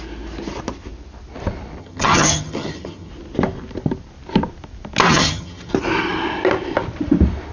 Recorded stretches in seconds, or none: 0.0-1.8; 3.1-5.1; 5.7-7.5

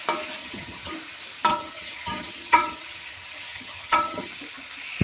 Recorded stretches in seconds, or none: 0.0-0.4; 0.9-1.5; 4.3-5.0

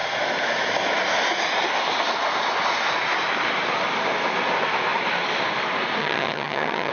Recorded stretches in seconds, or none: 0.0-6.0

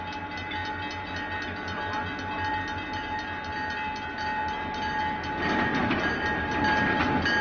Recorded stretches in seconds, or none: 0.0-7.4